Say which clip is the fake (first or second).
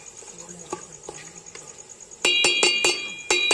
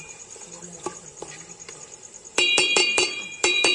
second